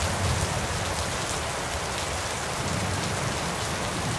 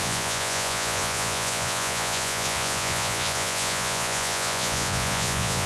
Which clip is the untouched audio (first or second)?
first